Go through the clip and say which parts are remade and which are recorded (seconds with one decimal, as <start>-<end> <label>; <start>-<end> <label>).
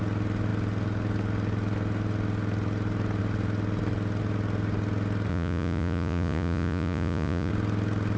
0.0-5.3 recorded; 5.3-7.5 remade; 7.5-8.2 recorded